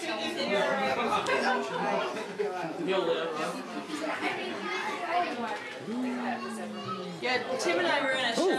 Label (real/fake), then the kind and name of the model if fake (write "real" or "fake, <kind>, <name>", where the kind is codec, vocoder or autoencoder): real